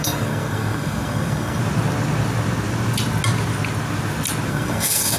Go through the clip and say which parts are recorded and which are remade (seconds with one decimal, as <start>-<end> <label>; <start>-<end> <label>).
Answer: 0.0-1.6 remade; 1.6-4.5 recorded; 4.5-5.2 remade

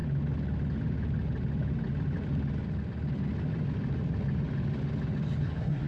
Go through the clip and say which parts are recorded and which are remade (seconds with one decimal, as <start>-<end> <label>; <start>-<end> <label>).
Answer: 0.0-5.4 recorded; 5.4-5.9 remade

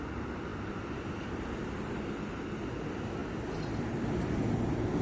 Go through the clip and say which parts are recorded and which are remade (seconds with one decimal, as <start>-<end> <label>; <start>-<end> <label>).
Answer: 0.0-5.0 recorded

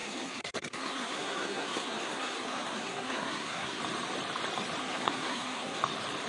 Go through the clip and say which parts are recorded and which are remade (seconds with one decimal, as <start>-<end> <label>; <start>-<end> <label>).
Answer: 0.0-3.8 remade; 3.8-4.8 recorded; 4.8-5.8 remade; 5.8-6.3 recorded

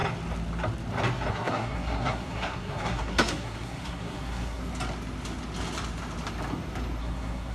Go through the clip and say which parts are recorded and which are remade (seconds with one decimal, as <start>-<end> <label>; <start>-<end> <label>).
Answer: 0.0-1.3 recorded; 1.3-4.6 remade; 4.6-7.0 recorded; 7.0-7.5 remade

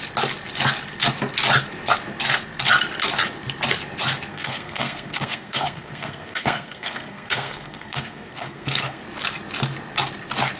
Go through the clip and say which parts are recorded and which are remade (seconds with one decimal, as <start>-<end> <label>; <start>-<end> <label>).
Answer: 0.0-4.3 recorded; 4.3-9.0 remade; 9.0-10.6 recorded